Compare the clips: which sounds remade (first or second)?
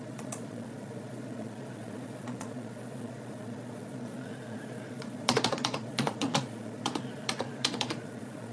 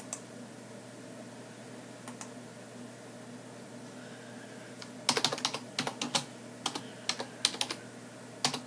first